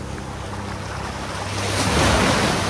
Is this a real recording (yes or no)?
yes